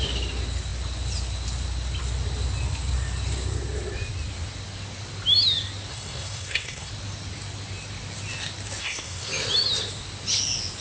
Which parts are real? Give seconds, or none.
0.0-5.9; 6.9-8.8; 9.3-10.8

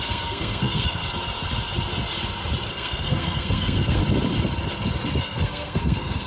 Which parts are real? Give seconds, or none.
1.0-2.7; 4.0-5.2